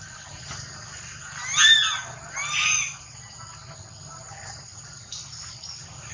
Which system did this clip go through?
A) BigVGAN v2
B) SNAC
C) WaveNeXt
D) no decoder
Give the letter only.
D